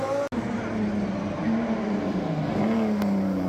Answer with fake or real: real